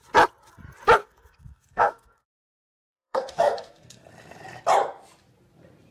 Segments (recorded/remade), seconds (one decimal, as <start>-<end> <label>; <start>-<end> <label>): 0.0-1.0 recorded; 1.0-4.0 remade; 4.0-5.9 recorded